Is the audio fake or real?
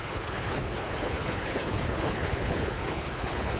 fake